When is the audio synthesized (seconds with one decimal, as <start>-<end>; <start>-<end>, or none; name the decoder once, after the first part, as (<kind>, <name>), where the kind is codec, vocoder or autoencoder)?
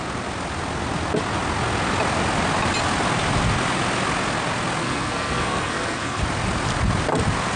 4.8-6.2 (codec, SNAC)